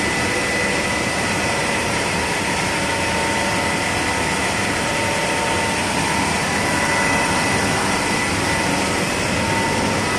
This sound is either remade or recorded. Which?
recorded